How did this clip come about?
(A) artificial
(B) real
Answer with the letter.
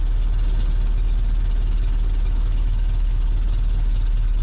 B